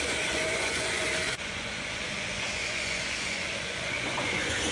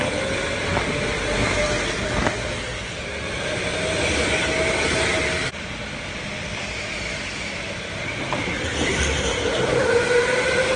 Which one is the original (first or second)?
second